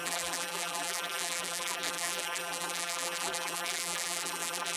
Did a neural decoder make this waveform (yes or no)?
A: yes